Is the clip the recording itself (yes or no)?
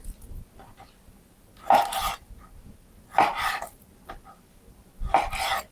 yes